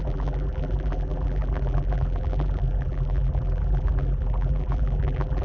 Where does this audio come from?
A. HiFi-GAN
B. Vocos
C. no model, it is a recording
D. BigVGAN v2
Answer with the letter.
D